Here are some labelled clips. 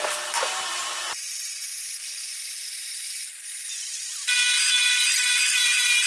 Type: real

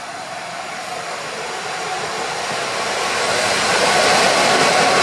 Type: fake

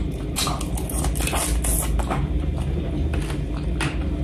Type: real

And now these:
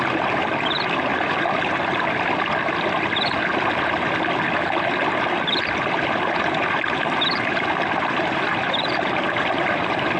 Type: fake